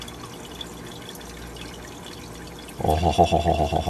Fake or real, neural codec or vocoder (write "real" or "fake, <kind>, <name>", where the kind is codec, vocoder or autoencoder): real